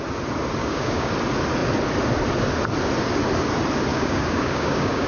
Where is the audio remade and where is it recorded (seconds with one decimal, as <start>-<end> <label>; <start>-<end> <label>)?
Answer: 0.0-0.6 recorded; 0.6-1.1 remade; 1.1-3.9 recorded; 3.9-5.1 remade

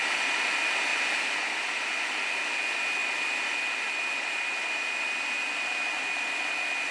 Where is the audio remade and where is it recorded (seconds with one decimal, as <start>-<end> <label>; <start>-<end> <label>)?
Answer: 0.0-6.9 recorded

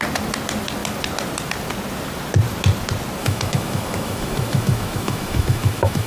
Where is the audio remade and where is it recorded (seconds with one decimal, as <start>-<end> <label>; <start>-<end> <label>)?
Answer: 0.0-3.2 recorded; 3.2-6.1 remade

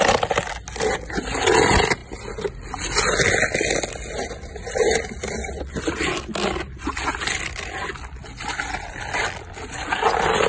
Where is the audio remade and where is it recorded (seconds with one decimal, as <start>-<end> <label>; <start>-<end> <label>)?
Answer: 0.0-10.5 recorded

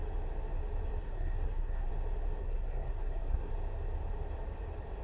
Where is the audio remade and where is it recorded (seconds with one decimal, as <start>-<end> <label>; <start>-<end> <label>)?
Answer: 0.0-1.0 recorded; 1.0-1.9 remade; 1.9-2.4 recorded; 2.4-3.5 remade; 3.5-5.0 recorded